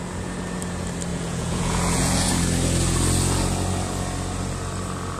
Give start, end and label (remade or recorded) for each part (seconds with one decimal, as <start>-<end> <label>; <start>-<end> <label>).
0.0-1.1 recorded; 1.1-2.3 remade; 2.3-5.2 recorded